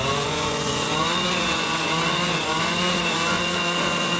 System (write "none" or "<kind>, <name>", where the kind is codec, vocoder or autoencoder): vocoder, Vocos